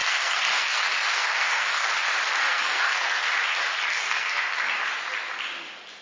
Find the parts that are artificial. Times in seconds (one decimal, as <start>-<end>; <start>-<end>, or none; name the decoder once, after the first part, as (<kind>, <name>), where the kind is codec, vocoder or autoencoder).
0.0-1.9 (codec, SNAC); 2.4-3.3; 3.9-4.4